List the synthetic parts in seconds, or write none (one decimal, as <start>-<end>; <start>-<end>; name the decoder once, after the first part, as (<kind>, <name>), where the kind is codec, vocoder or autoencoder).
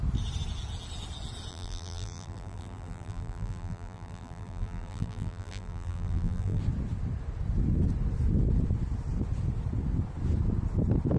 1.5-6.6 (vocoder, BigVGAN v2)